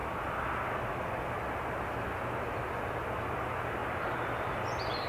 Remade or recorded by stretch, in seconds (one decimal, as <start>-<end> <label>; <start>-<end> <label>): 0.0-3.8 recorded; 3.8-4.5 remade; 4.5-5.1 recorded